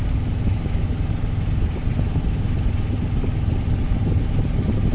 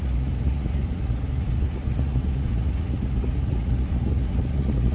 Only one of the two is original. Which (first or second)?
first